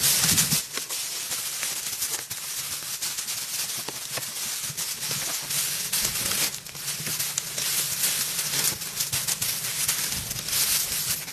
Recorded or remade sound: recorded